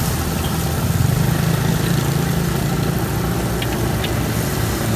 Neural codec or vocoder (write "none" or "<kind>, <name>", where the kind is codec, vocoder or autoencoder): none